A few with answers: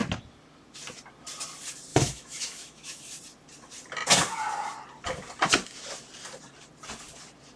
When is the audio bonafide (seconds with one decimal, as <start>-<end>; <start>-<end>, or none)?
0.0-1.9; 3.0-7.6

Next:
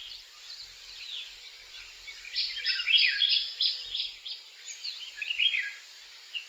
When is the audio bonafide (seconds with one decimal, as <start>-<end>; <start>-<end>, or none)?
0.0-6.5

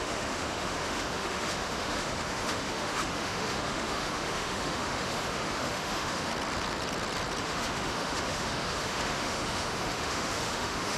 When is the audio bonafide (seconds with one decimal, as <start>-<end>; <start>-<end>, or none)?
6.3-7.4

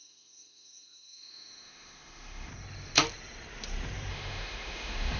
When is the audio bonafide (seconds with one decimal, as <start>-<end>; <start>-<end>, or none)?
2.5-4.1